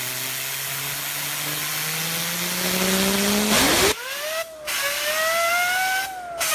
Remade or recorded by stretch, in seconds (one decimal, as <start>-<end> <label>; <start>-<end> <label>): 0.0-6.5 recorded